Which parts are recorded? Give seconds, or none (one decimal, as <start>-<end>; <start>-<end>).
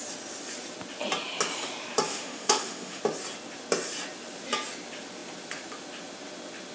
0.0-2.1; 3.0-6.7